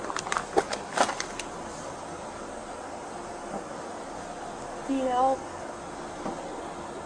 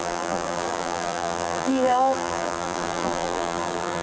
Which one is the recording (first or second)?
first